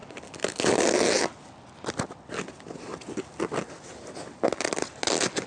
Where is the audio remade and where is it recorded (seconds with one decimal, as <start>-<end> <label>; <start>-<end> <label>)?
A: 0.0-5.5 recorded